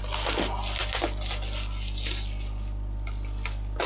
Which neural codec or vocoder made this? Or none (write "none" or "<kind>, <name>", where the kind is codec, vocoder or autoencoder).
none